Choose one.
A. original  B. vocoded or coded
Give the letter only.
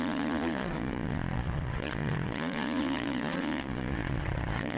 B